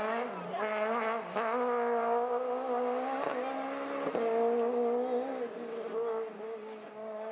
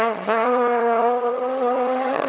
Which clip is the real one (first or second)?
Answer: first